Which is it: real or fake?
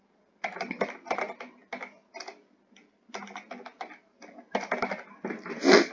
real